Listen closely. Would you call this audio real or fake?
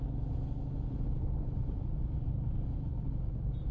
real